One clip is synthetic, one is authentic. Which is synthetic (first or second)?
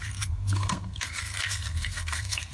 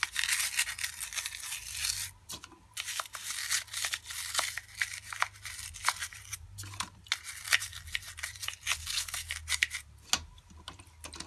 first